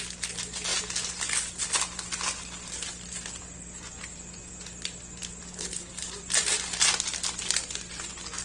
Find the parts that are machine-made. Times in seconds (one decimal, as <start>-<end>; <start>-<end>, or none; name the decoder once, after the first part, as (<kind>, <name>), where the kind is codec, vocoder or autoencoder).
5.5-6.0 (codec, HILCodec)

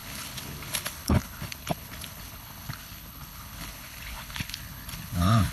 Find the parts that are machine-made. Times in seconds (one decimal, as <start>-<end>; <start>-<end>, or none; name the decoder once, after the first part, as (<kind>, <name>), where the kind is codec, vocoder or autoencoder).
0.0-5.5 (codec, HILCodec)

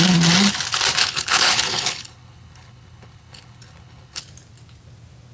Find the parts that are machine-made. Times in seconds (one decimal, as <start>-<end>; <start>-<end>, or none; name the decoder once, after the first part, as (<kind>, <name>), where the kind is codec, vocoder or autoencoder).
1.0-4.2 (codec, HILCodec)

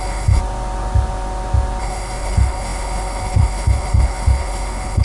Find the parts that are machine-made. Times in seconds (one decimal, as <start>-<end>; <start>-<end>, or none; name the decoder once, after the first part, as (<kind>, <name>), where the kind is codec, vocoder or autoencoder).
0.0-0.4 (codec, HILCodec); 1.8-5.0